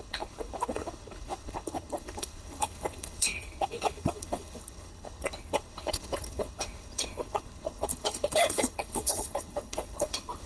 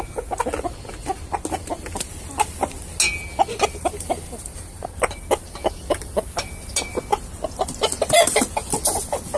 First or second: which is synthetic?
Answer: first